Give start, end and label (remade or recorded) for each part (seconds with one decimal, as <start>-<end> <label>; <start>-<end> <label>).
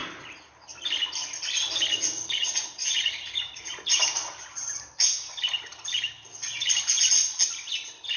0.0-1.9 recorded; 1.9-4.0 remade; 4.0-8.2 recorded